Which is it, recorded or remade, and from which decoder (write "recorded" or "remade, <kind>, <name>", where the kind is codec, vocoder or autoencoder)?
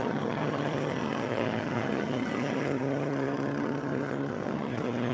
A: remade, vocoder, HiFi-GAN